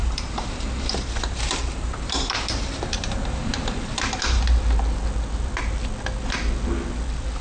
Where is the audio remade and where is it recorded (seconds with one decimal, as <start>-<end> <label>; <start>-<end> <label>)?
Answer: 0.0-4.4 remade; 4.4-7.4 recorded